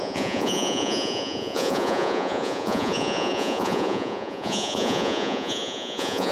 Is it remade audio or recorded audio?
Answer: remade